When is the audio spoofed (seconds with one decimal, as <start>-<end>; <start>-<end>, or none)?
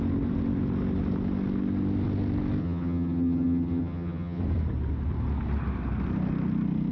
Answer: 2.6-4.4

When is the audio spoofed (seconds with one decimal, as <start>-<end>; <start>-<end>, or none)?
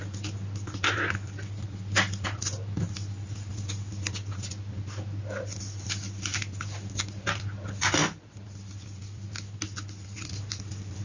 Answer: none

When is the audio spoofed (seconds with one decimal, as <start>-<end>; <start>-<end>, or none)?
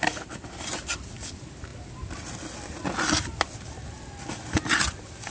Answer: none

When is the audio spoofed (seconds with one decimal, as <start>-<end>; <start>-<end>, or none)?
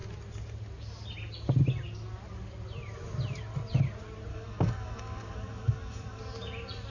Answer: 4.3-6.2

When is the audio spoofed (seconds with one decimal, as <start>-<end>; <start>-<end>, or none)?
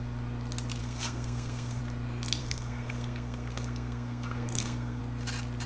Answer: 0.8-1.8; 2.4-5.0